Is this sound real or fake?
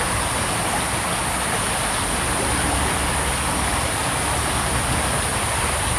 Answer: real